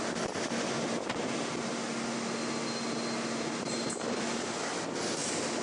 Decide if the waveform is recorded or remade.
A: recorded